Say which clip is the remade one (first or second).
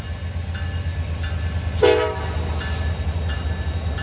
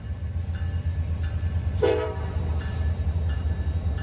second